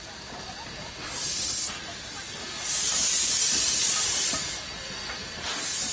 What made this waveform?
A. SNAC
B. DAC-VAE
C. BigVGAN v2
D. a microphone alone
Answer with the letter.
C